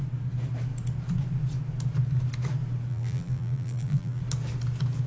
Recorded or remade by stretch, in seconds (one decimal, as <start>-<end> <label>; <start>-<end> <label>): 0.0-2.9 recorded; 2.9-4.2 remade; 4.2-5.1 recorded